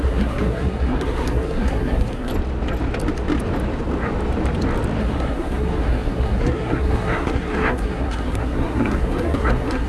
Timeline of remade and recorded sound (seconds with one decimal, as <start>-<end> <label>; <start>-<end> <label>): 0.0-2.3 remade; 2.3-5.0 recorded; 5.0-9.9 remade